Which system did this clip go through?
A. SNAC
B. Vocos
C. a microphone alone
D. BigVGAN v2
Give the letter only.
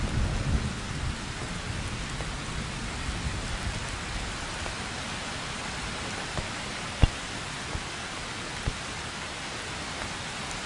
C